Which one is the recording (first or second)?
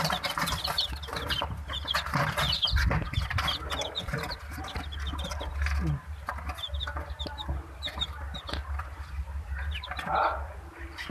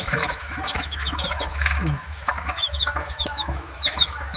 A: first